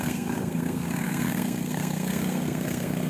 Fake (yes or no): yes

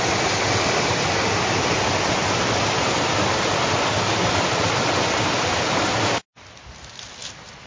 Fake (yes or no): no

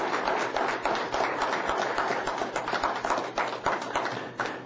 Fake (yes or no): no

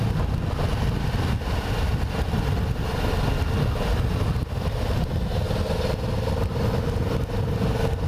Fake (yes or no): no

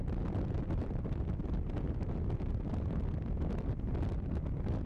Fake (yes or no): no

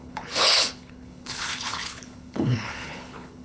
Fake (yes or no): yes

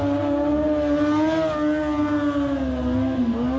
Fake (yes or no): no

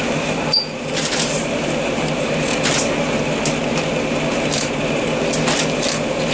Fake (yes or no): yes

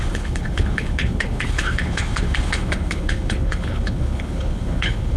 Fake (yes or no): yes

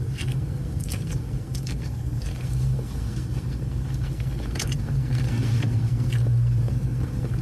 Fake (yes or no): yes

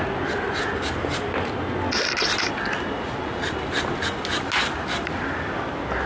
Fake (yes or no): no